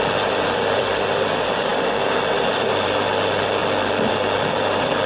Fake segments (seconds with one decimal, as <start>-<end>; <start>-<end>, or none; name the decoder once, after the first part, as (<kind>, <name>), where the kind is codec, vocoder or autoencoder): none